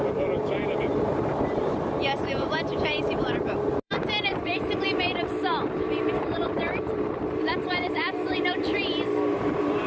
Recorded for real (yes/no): no